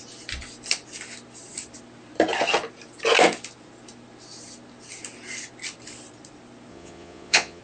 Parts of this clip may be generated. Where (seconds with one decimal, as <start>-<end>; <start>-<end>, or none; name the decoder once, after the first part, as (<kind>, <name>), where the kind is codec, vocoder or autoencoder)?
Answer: 6.7-7.6 (vocoder, Vocos)